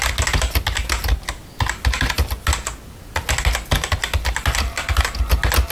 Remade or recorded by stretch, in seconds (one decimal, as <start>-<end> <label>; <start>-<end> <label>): 0.0-5.7 recorded